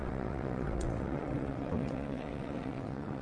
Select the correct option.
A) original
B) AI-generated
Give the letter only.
B